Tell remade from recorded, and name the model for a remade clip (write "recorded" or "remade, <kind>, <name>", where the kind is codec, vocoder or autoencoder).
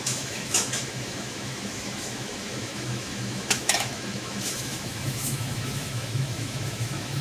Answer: remade, autoencoder, DAC-VAE